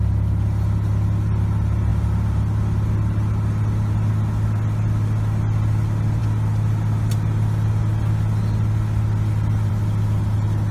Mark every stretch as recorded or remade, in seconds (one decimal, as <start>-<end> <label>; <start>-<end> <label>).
0.0-10.7 recorded